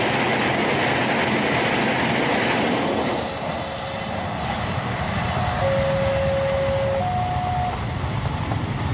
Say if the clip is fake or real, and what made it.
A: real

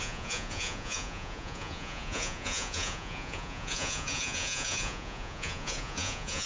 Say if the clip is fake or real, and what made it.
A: fake, vocoder, Vocos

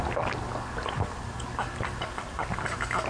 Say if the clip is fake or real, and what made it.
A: real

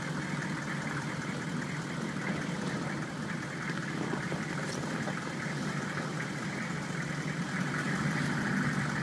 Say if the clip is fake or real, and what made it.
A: real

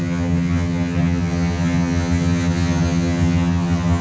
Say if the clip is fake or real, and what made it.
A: fake, vocoder, HiFi-GAN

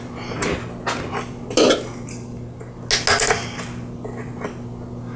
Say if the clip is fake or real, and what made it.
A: real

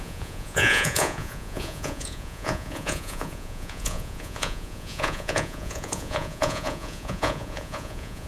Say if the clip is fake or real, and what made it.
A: fake, vocoder, Vocos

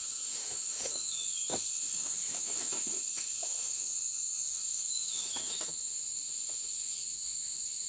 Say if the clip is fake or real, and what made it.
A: fake, autoencoder, DAC-VAE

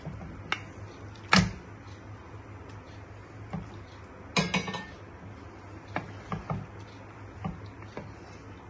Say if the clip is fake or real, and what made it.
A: real